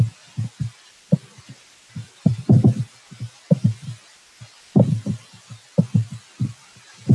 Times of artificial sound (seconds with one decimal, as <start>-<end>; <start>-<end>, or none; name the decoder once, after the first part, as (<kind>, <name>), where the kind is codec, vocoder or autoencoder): none